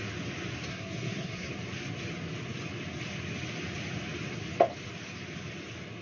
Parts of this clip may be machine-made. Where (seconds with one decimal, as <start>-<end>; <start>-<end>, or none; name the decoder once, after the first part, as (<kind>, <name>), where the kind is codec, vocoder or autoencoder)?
0.7-1.5 (codec, SNAC)